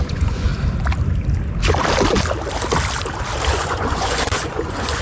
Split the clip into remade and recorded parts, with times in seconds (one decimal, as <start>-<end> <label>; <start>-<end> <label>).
0.0-0.5 remade; 0.5-3.5 recorded; 3.5-5.0 remade